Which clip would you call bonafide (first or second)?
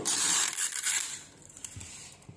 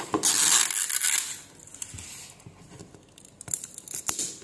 second